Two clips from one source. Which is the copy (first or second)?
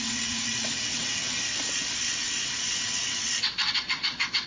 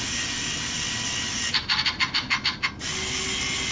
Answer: first